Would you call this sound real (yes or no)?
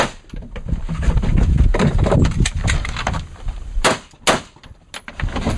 yes